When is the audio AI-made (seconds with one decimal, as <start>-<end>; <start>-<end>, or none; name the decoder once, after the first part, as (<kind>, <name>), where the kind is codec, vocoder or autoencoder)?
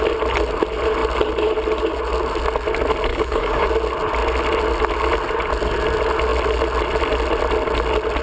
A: 3.1-3.7 (codec, DAC)